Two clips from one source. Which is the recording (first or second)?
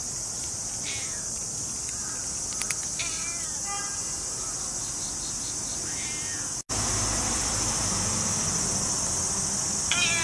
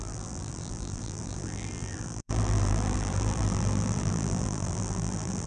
first